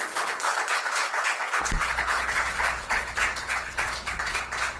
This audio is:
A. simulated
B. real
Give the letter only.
A